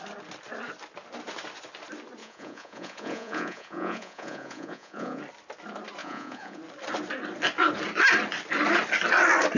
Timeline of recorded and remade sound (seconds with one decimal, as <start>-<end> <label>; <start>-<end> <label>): 0.0-2.2 recorded; 2.2-5.2 remade; 5.2-6.0 recorded; 6.0-6.6 remade; 6.6-9.6 recorded